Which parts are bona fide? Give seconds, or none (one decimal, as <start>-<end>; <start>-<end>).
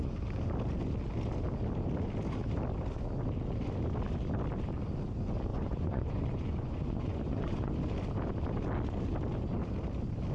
0.0-5.5; 7.7-10.3